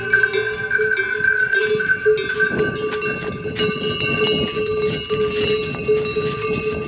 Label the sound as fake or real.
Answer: real